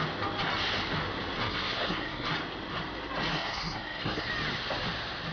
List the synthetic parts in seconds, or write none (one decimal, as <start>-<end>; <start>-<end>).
1.4-2.3; 3.3-4.3